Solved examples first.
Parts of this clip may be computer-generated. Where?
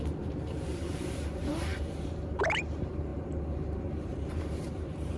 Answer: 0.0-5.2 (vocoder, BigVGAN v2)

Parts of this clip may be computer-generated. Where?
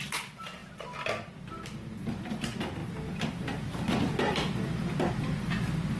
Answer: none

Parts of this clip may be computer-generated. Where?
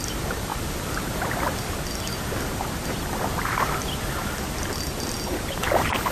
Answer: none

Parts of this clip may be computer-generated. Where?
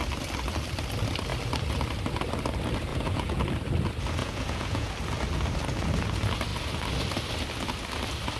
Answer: 2.9-3.4 (vocoder, Vocos); 4.2-4.9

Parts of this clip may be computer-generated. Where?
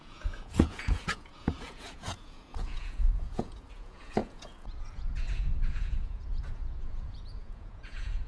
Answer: 0.0-8.3 (vocoder, Vocos)